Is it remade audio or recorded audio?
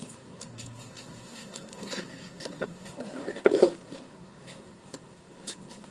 remade